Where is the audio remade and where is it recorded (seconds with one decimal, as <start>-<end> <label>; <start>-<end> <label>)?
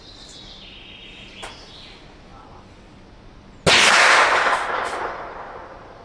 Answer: 0.0-6.0 recorded